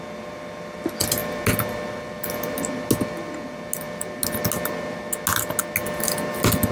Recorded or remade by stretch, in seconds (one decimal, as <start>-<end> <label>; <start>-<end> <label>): 0.0-6.7 recorded